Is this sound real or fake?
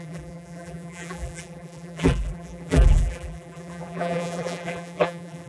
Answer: fake